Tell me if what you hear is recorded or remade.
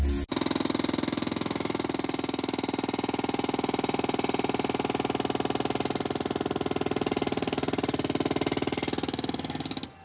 recorded